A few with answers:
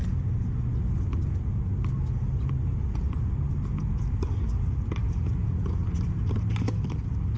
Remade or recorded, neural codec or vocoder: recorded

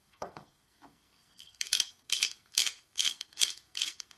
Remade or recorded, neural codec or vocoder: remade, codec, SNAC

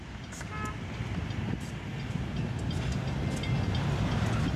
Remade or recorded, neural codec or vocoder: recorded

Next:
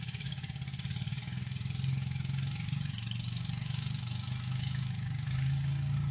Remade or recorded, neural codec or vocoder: remade, codec, DAC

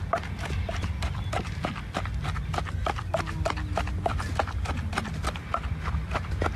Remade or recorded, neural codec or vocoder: recorded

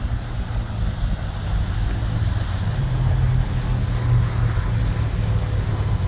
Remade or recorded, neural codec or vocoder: recorded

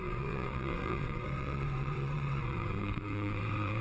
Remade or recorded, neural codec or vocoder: remade, vocoder, WaveNeXt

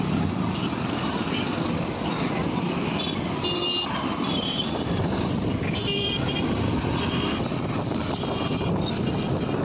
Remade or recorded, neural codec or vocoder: recorded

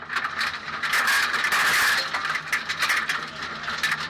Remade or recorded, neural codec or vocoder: recorded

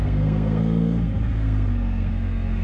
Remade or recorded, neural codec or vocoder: remade, codec, SNAC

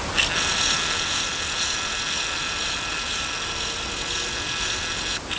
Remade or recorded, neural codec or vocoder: recorded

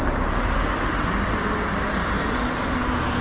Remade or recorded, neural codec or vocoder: recorded